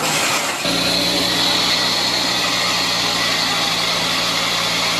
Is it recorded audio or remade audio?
recorded